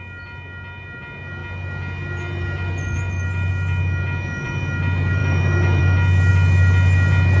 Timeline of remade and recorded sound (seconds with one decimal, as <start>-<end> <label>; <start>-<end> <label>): 0.0-7.4 recorded